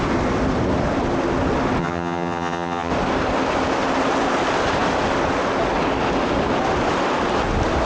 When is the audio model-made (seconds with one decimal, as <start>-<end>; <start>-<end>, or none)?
1.8-2.9